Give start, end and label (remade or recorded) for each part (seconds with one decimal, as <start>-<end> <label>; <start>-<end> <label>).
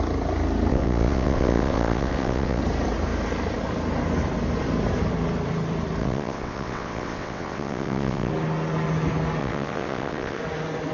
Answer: 0.0-0.7 recorded; 0.7-2.6 remade; 2.6-6.0 recorded; 6.0-8.3 remade; 8.3-9.4 recorded; 9.4-10.4 remade; 10.4-10.9 recorded